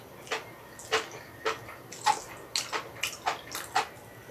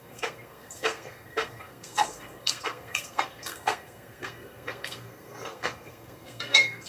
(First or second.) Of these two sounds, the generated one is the second